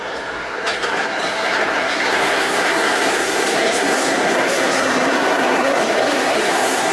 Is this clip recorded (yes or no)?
no